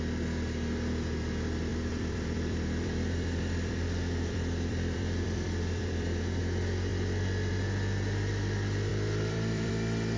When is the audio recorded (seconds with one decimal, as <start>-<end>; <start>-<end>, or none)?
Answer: 0.0-1.7; 6.4-8.9; 9.7-10.2